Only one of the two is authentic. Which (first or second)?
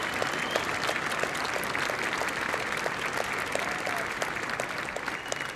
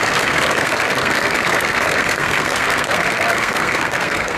first